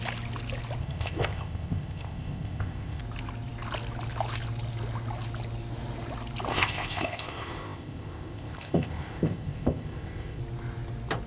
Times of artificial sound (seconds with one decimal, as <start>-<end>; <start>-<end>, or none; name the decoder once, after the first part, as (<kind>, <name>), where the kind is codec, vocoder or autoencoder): 0.8-3.0 (codec, ZipCodec); 6.5-10.4